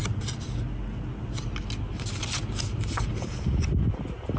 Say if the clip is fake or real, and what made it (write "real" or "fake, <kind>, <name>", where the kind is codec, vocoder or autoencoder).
real